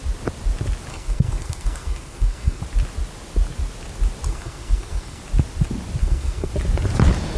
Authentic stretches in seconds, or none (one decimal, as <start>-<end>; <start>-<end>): 0.0-0.9; 2.6-4.3; 5.2-6.0; 6.5-7.4